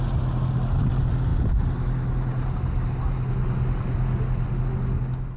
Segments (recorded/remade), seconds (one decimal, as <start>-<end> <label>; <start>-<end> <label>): 0.0-5.4 recorded

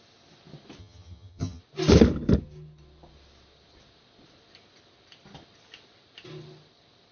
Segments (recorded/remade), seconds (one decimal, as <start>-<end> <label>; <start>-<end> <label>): 0.0-0.8 recorded; 0.8-1.6 remade; 1.6-7.1 recorded

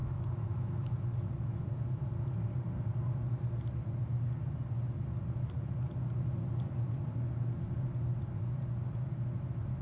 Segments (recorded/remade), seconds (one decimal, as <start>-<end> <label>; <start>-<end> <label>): 0.0-1.6 remade; 1.6-9.8 recorded

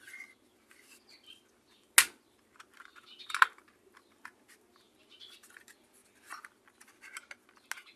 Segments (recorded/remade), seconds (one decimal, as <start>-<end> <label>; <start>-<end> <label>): 0.0-8.0 recorded